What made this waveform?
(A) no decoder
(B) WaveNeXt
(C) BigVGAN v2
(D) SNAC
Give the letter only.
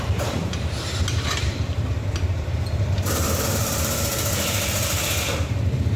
C